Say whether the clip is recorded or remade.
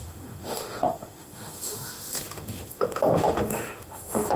remade